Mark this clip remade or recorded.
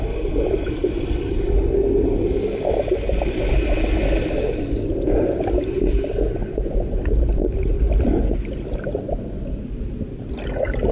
recorded